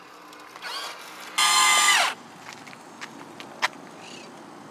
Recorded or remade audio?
recorded